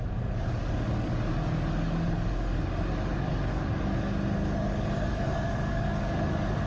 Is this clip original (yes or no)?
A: no